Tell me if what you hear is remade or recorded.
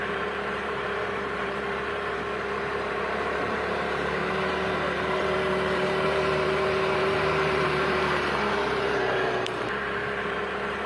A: remade